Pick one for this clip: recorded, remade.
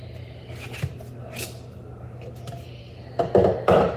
recorded